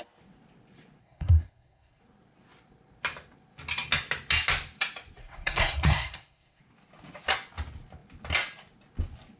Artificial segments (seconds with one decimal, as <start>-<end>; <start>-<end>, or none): 1.0-2.0; 5.2-6.6